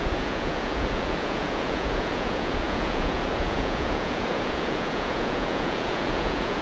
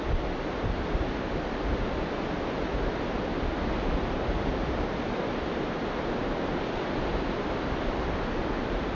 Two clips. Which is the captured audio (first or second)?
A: second